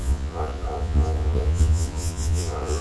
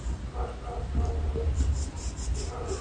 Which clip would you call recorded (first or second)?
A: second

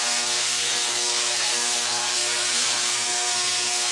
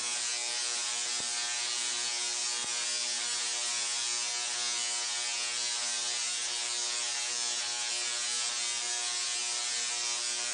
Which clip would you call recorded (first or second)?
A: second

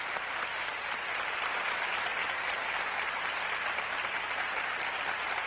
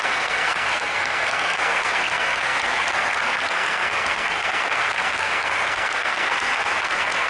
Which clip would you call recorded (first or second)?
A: first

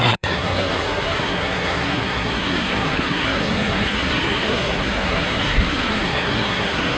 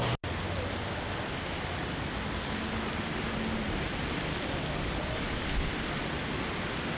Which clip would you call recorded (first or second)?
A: second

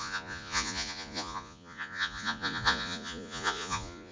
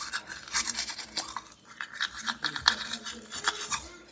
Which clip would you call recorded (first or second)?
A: second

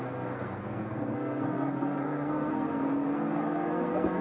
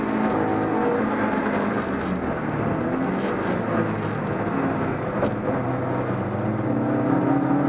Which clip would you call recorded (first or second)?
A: second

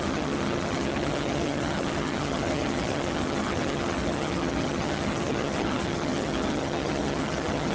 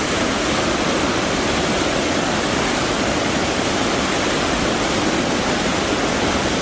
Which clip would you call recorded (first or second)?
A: second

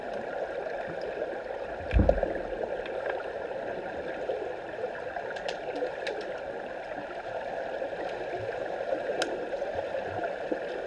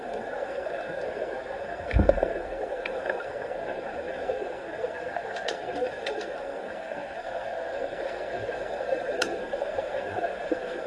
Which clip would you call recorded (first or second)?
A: first